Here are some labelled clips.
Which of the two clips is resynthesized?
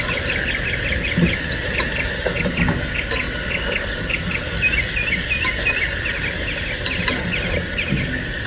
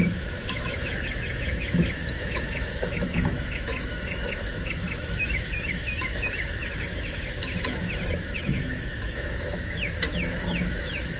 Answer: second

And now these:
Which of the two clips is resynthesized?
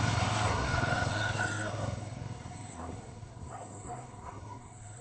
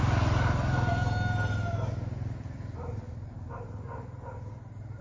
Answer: first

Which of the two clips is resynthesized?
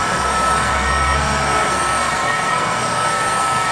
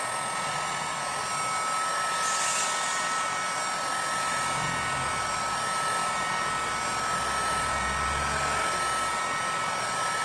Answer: first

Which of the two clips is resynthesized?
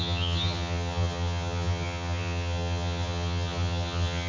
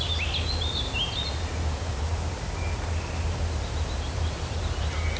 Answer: first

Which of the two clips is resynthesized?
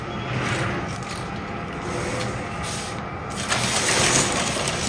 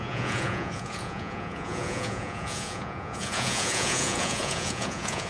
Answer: second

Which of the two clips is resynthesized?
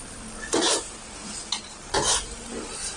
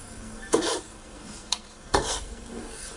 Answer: second